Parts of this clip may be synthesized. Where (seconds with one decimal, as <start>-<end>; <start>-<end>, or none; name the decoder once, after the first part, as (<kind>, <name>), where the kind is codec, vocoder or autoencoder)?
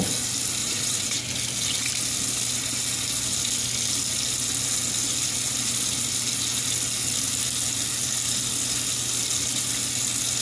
0.6-1.2 (vocoder, WaveNeXt)